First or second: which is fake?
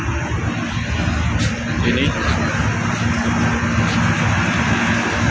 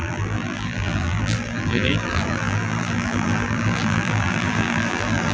second